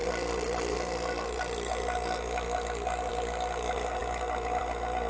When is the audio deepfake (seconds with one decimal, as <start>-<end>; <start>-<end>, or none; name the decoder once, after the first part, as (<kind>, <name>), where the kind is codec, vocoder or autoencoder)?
none